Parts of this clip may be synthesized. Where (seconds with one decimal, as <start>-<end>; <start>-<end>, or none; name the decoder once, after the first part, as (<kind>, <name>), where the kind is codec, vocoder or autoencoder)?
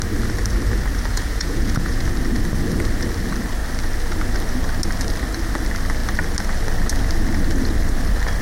1.1-2.0 (vocoder, Vocos)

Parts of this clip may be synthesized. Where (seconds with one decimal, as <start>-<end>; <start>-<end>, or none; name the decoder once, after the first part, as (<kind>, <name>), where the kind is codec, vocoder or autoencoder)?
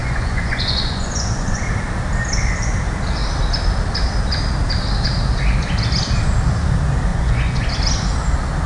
0.0-1.6 (vocoder, Vocos); 7.1-7.7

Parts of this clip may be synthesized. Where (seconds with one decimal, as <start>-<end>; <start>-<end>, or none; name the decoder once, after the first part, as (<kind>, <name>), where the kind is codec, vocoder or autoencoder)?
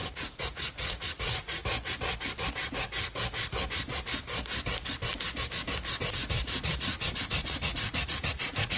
0.0-1.6 (vocoder, Vocos); 6.1-8.8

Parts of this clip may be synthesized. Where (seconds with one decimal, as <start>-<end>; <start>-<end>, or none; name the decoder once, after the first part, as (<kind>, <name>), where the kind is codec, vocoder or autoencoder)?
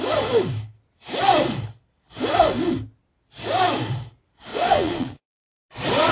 4.5-5.2 (vocoder, Vocos)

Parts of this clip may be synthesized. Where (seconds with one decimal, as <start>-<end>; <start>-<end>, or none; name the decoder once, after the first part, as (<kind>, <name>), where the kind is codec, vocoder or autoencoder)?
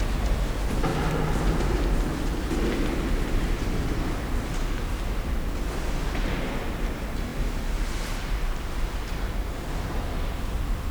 none